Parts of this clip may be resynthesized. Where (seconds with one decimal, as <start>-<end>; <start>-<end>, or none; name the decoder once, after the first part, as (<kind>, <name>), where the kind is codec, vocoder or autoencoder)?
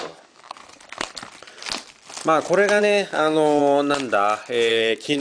0.0-0.6 (codec, DAC); 2.8-3.6; 4.7-5.2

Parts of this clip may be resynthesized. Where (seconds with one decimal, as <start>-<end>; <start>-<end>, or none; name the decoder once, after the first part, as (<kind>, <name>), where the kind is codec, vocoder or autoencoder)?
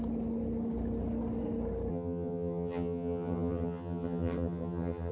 1.9-5.1 (vocoder, HiFi-GAN)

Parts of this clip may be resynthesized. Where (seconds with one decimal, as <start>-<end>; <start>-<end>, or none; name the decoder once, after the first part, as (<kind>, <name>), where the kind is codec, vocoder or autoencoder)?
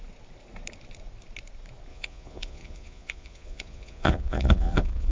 1.9-5.1 (vocoder, Vocos)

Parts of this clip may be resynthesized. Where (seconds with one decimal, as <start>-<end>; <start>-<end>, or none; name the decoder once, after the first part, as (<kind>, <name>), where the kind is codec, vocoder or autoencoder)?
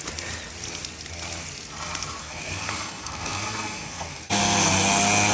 2.2-4.4 (codec, SNAC)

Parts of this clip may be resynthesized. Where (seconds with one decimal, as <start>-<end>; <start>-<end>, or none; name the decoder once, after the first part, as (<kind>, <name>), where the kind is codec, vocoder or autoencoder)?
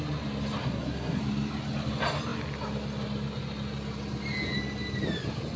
0.6-1.2 (codec, SNAC)